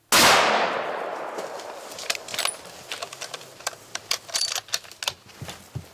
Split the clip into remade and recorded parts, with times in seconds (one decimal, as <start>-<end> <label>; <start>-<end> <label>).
0.0-5.9 recorded